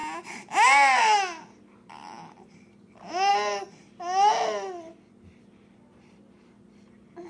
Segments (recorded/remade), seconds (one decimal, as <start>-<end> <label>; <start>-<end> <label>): 0.0-7.3 recorded